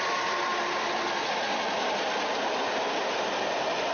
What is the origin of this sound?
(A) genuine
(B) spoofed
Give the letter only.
A